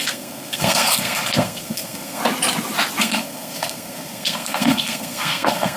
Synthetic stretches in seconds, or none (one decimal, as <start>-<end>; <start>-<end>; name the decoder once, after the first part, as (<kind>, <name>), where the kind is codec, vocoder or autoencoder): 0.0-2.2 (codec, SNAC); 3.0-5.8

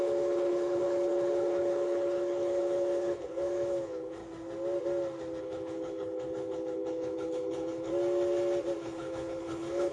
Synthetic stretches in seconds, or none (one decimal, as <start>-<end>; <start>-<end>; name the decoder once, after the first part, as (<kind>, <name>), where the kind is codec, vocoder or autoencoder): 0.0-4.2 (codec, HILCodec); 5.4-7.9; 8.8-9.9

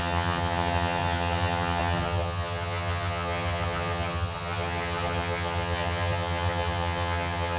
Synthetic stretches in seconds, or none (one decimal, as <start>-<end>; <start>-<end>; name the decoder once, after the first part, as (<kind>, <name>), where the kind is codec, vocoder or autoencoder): 0.0-7.6 (vocoder, HiFi-GAN)

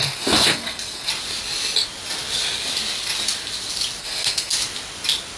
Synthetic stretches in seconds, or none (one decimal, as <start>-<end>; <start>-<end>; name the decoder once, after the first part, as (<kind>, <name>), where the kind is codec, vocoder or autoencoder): 0.0-1.1 (codec, SNAC); 4.0-4.5